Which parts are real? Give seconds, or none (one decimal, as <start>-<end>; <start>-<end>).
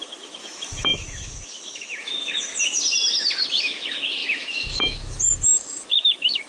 2.5-3.6